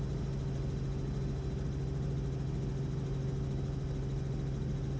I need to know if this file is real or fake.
real